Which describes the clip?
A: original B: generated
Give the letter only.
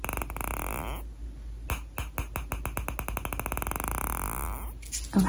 A